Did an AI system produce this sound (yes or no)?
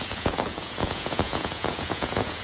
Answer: yes